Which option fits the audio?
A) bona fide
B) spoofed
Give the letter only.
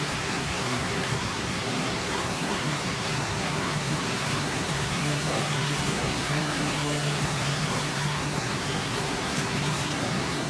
B